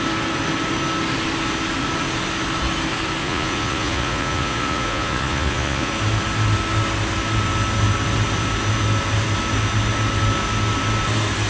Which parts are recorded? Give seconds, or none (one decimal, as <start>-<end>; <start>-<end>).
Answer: 0.0-3.2; 5.9-11.5